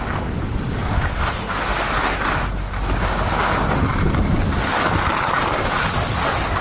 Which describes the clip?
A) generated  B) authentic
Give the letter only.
B